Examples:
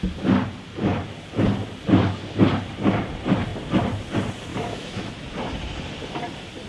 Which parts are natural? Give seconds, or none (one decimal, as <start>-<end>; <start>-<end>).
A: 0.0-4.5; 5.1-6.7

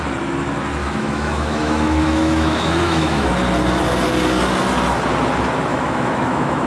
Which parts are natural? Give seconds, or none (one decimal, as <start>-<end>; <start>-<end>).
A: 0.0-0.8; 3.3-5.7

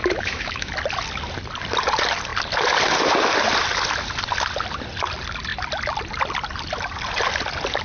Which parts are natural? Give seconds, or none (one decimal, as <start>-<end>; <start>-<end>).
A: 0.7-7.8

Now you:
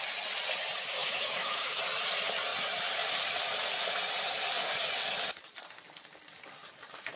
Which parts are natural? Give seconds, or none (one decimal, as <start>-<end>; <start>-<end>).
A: 0.0-1.0; 1.8-7.2

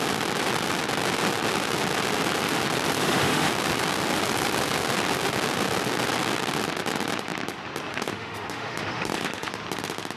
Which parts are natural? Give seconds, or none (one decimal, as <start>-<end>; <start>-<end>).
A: 0.0-3.0; 3.5-7.9; 9.5-10.2

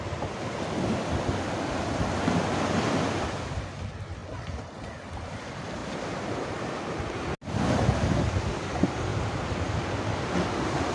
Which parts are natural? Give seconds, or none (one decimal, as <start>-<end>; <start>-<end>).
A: 0.0-10.9

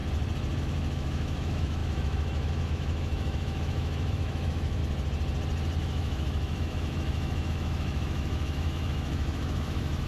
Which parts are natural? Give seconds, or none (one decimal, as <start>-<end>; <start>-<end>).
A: 0.0-0.6; 4.8-5.8

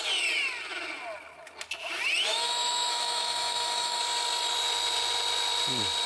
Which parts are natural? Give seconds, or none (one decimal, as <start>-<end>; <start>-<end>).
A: 0.0-2.3; 4.0-6.1